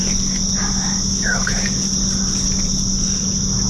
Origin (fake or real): real